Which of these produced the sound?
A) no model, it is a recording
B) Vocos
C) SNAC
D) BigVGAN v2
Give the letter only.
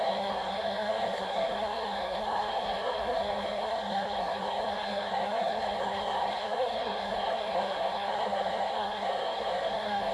C